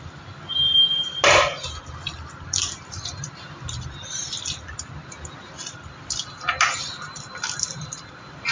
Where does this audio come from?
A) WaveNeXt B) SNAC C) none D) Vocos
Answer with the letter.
C